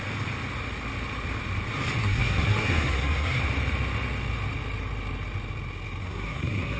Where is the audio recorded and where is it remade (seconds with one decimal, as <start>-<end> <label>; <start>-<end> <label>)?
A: 0.0-2.0 recorded; 2.0-3.4 remade; 3.4-6.0 recorded; 6.0-6.8 remade